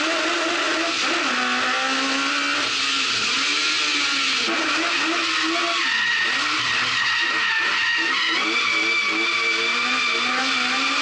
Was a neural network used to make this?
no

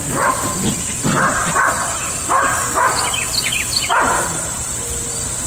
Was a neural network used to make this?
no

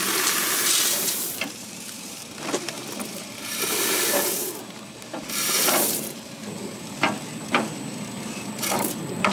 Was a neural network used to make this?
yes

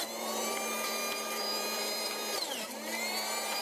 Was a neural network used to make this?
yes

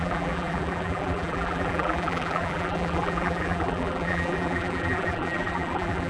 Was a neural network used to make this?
yes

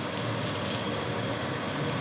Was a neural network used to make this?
no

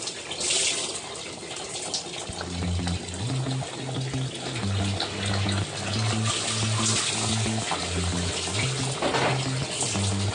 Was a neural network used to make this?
no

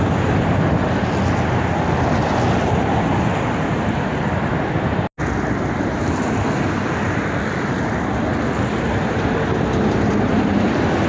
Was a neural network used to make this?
no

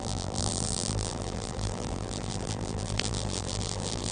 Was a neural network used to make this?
yes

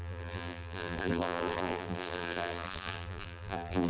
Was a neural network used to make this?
yes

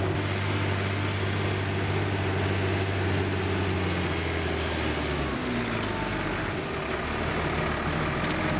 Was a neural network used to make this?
no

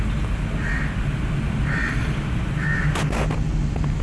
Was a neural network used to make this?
no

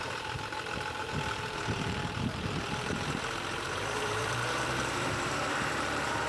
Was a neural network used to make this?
yes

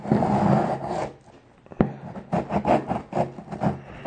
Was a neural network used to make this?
no